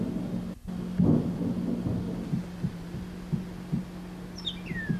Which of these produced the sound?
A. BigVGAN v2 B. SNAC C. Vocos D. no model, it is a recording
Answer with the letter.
D